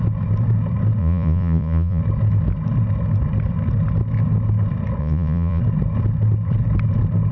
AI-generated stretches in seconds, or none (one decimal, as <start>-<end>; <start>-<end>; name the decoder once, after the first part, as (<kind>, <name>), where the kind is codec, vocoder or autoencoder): 1.0-2.0 (vocoder, Vocos); 5.0-5.6